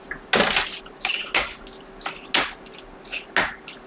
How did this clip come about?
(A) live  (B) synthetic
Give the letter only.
A